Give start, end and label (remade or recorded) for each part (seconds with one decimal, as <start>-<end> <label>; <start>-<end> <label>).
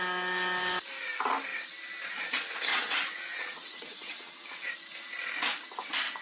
0.0-2.7 recorded; 2.7-4.7 remade; 4.7-6.2 recorded